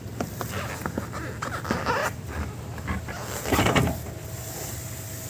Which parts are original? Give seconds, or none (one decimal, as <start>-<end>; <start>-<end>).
0.0-2.0